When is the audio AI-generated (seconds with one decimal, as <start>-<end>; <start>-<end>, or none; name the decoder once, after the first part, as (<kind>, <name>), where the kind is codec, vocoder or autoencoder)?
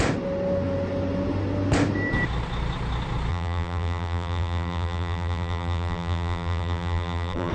3.3-7.5 (vocoder, BigVGAN v2)